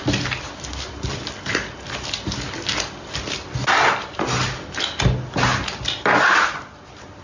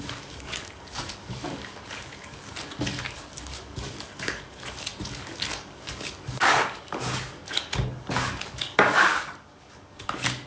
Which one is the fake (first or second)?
second